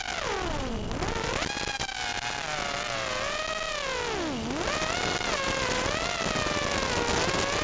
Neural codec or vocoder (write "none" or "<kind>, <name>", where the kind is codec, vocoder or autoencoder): none